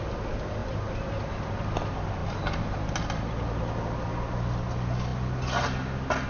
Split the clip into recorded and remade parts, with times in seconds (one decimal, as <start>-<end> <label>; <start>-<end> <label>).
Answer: 0.0-0.6 recorded; 0.6-1.6 remade; 1.6-2.2 recorded; 2.2-2.9 remade; 2.9-6.3 recorded